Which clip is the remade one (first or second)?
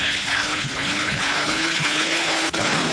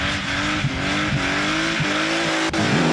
first